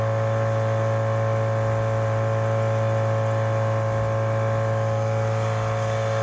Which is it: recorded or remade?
recorded